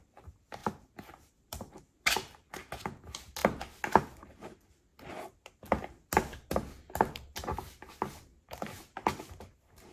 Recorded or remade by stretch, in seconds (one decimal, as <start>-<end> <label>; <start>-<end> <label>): 0.0-0.6 recorded; 0.6-1.7 remade; 1.7-9.9 recorded